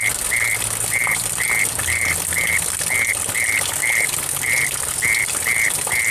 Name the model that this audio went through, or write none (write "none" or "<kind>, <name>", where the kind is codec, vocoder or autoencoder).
none